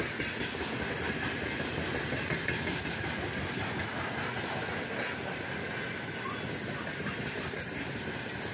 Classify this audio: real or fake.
real